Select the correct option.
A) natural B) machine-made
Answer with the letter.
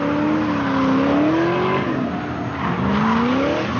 A